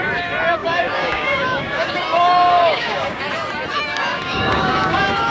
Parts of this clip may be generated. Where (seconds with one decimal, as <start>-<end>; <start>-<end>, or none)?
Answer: 0.6-3.2; 3.9-5.3